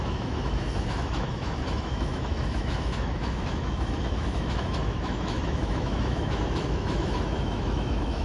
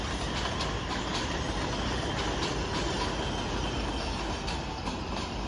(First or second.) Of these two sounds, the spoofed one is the first